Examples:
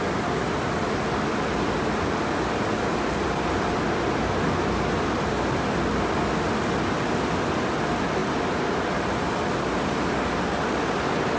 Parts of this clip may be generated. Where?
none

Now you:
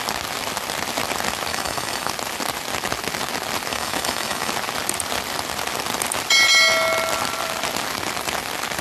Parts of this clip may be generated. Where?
1.5-2.1; 3.7-4.5

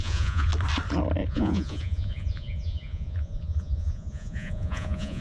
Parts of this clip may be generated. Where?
0.0-0.5; 1.3-5.2

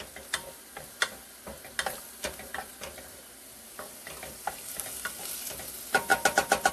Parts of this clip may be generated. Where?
none